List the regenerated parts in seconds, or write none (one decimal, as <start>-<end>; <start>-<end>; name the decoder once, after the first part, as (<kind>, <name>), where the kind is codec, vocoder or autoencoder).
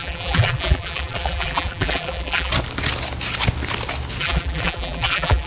0.0-2.5 (vocoder, BigVGAN v2); 4.2-5.5